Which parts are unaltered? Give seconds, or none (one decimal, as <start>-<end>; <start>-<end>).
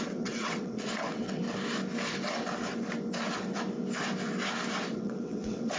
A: 1.4-4.9